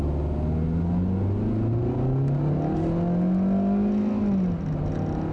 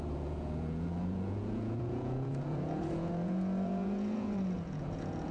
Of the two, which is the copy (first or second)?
second